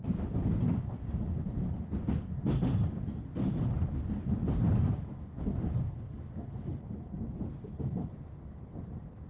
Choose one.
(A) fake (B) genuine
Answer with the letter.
B